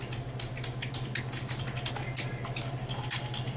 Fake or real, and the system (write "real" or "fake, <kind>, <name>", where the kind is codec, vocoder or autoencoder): real